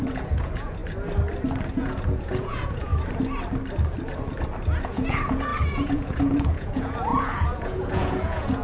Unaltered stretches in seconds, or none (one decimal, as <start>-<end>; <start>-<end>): 0.8-1.8; 2.9-4.8